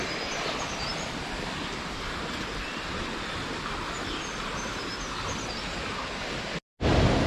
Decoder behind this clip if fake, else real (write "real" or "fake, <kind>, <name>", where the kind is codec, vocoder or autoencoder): real